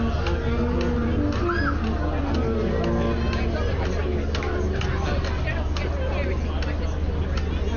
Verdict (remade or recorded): recorded